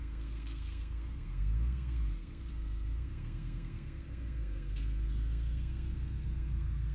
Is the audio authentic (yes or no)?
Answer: no